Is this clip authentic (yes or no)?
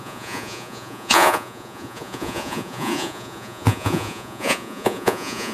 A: no